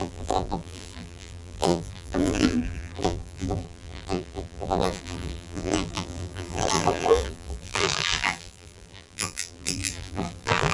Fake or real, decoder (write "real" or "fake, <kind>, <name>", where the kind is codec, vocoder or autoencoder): fake, vocoder, BigVGAN v2